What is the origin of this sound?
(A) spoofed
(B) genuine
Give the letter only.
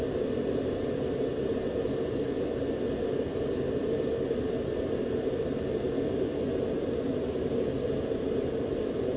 B